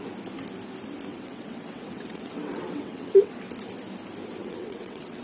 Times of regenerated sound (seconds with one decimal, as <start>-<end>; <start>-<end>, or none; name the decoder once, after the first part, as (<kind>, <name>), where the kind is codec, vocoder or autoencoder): 1.1-3.4 (vocoder, WaveNeXt); 4.4-5.2